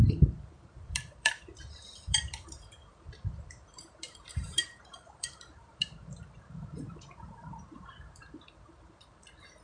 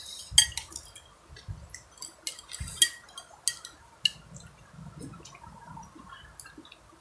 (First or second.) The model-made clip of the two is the first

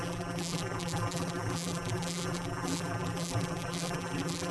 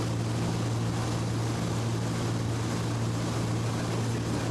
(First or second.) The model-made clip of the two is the first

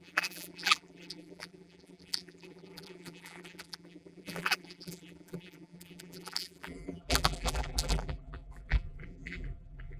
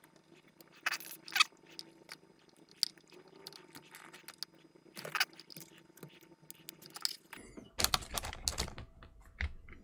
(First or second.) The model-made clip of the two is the first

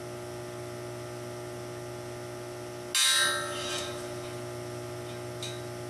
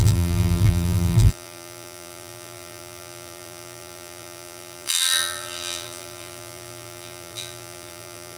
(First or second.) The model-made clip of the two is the second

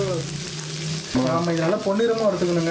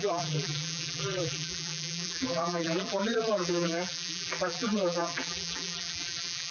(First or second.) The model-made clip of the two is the second